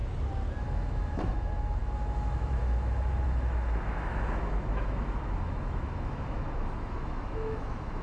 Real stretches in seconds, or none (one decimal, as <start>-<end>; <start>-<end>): 0.0-0.6